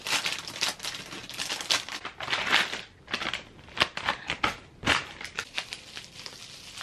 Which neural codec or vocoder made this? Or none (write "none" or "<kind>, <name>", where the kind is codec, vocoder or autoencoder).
none